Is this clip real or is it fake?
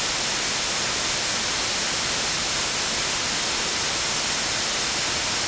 real